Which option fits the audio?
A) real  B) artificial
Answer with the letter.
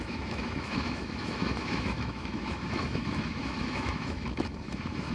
B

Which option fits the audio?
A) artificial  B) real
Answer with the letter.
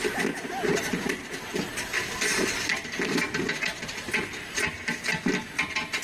B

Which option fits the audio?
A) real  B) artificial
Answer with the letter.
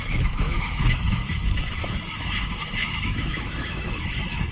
B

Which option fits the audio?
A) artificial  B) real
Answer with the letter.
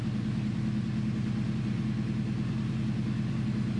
B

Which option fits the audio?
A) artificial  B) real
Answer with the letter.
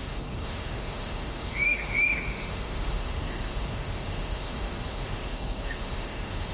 A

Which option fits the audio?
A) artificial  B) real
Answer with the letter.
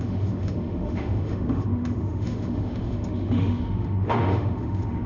A